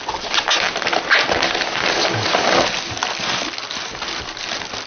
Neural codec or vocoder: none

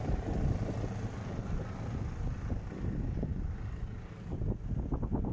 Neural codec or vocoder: none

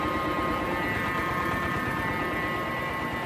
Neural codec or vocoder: none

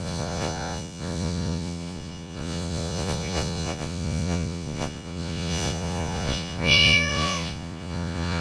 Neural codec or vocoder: vocoder, Vocos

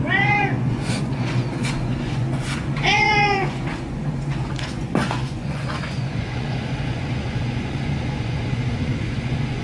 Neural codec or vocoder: vocoder, Vocos